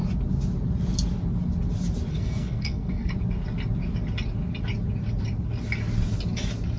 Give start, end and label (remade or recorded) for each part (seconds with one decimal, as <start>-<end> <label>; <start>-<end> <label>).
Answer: 0.0-2.1 recorded; 2.1-3.1 remade; 3.1-6.8 recorded